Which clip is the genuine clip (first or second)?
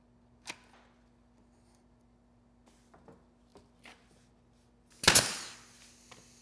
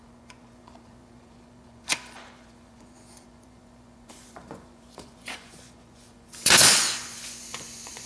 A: first